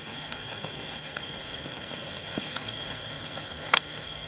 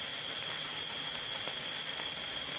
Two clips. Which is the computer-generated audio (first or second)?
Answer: first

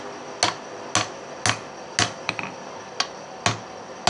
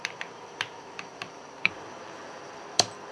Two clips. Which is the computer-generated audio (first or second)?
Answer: second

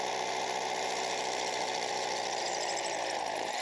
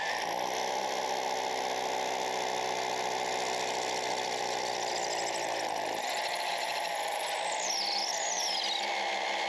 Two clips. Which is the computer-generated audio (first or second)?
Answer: first